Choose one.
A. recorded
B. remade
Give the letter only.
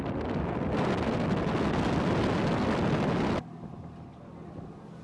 A